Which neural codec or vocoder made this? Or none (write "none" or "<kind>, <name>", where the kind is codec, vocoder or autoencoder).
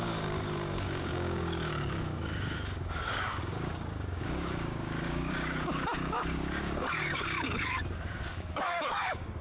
codec, DAC